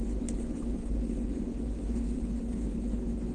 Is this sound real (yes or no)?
no